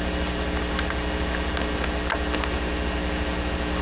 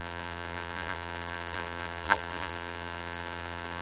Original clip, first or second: first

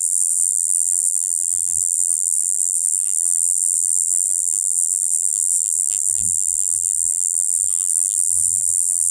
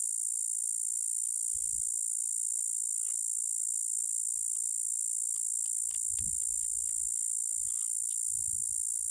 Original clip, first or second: second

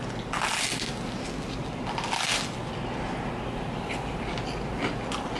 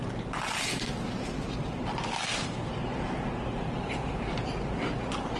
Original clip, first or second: first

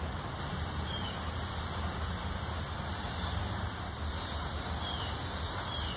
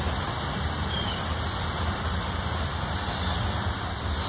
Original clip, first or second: first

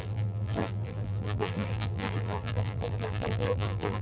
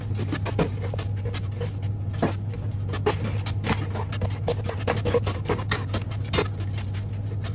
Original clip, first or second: second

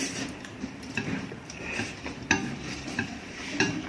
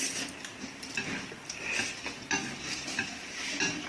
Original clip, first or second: second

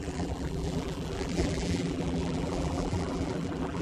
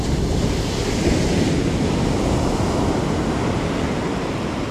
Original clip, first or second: second